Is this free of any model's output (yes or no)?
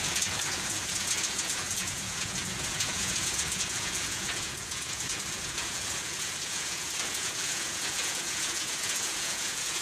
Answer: no